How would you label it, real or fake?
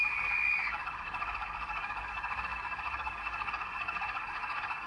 fake